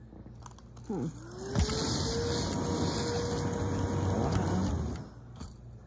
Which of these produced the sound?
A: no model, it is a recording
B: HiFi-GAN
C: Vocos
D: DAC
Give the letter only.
A